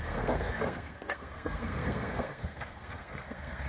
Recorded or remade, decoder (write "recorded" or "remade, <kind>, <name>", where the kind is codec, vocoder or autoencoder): remade, codec, SNAC